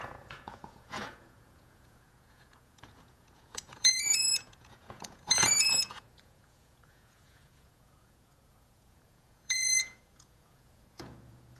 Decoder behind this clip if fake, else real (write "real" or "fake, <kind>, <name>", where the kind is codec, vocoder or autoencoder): fake, vocoder, Vocos